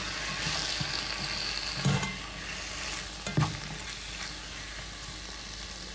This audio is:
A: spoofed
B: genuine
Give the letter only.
B